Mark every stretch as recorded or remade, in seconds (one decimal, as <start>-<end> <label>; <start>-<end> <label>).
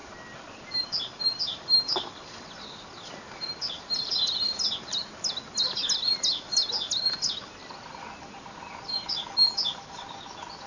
0.0-10.7 recorded